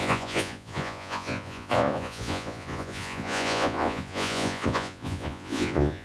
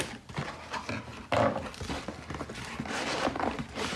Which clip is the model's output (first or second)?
first